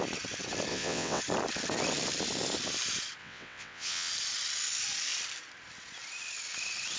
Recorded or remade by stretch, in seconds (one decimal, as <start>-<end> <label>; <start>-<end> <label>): 0.0-0.7 recorded; 0.7-1.2 remade; 1.2-3.2 recorded; 3.2-4.1 remade; 4.1-7.0 recorded